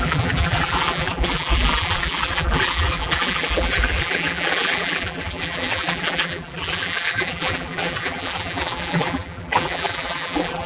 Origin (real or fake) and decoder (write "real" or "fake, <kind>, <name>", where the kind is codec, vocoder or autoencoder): fake, vocoder, BigVGAN v2